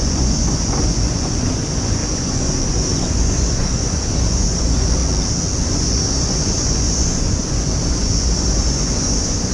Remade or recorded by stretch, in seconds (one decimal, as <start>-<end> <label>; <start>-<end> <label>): 0.0-5.0 remade; 5.0-5.7 recorded; 5.7-9.5 remade